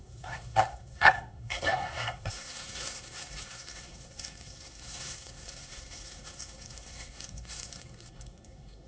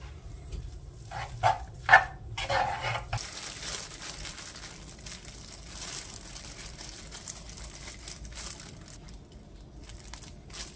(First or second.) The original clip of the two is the second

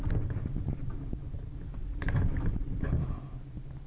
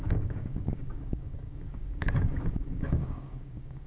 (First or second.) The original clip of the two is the first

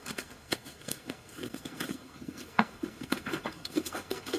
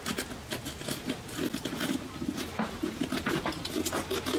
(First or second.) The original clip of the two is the second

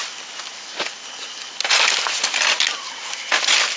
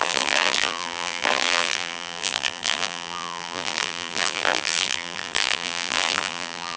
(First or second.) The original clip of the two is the first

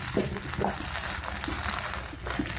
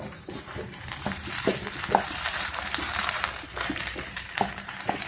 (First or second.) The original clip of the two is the first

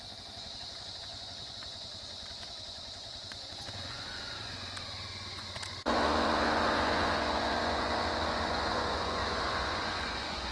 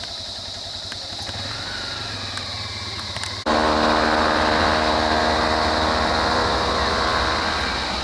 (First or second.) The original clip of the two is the second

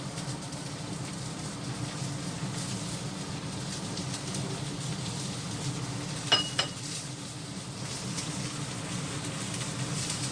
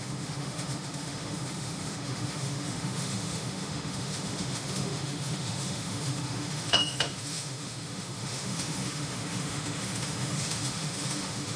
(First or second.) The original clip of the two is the first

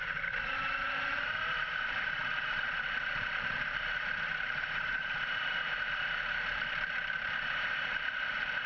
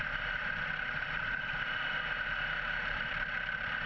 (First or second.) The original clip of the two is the second